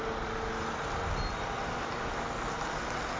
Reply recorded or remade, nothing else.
recorded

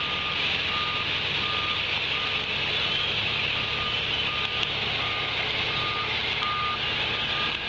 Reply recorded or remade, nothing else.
recorded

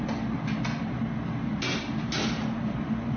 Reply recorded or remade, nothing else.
recorded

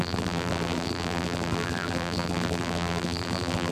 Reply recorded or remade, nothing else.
remade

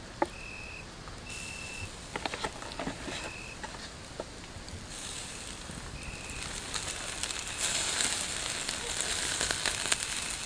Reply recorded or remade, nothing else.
recorded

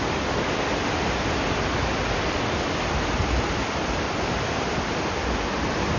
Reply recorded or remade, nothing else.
recorded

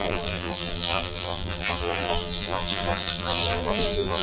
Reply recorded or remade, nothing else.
remade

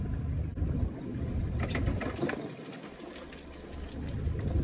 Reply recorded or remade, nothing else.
recorded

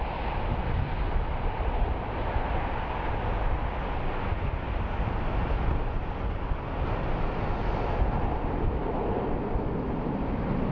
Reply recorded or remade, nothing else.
recorded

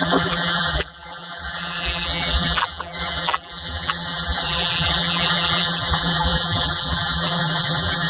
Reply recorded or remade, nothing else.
remade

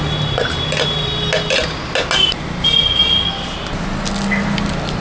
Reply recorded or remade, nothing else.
recorded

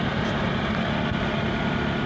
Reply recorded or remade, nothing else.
recorded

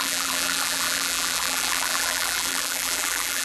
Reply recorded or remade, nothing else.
remade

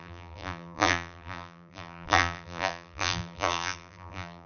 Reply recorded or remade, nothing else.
remade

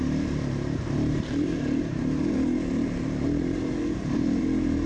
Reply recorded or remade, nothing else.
remade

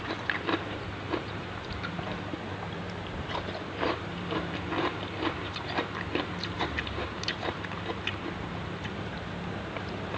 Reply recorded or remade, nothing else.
remade